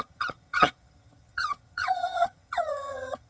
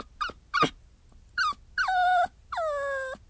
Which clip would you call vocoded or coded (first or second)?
first